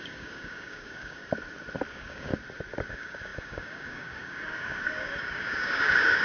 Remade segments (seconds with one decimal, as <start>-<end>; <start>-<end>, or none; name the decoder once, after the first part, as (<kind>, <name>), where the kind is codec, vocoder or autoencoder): 0.0-1.2 (codec, DAC); 1.9-2.3; 2.9-6.2